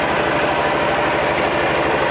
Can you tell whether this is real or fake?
real